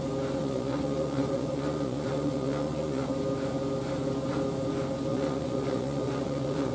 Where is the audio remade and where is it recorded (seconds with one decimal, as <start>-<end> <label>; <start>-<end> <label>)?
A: 0.0-0.4 recorded; 0.4-3.1 remade; 3.1-5.1 recorded; 5.1-6.7 remade